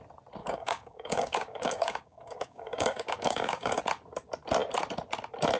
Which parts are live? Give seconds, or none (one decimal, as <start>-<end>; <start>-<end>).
0.0-0.4; 3.8-5.6